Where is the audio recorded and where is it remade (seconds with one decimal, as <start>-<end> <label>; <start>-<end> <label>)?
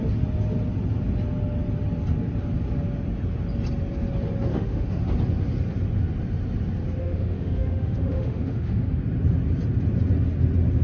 0.0-4.5 recorded; 4.5-5.0 remade; 5.0-7.0 recorded; 7.0-9.0 remade; 9.0-10.8 recorded